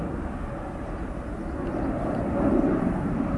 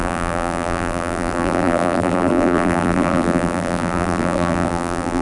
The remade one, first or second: second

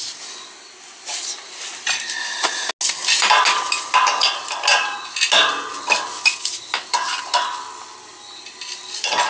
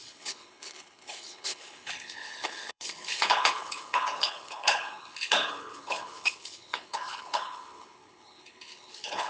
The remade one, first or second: second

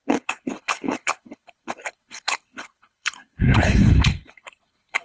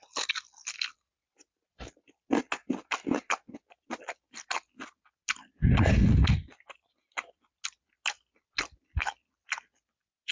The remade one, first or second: first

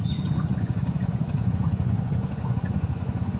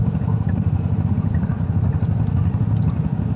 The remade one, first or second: first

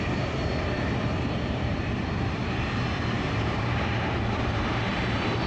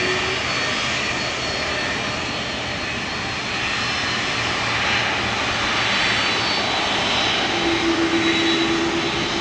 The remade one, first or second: first